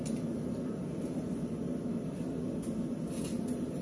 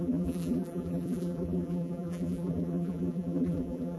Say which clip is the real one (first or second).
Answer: first